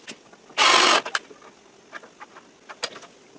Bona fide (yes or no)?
yes